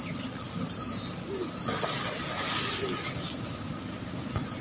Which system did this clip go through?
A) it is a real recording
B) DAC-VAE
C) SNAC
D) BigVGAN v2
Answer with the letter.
A